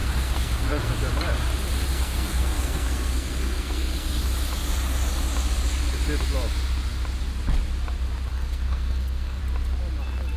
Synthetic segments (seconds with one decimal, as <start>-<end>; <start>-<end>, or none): 0.0-0.9; 1.9-4.2; 8.3-9.4